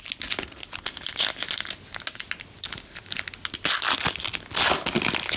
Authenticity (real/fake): real